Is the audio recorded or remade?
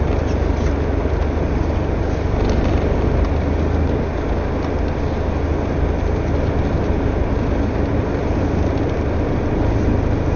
recorded